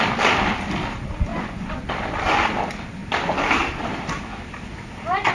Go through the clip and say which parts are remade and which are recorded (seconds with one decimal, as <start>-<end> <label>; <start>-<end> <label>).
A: 0.0-1.3 recorded; 1.3-1.9 remade; 1.9-5.3 recorded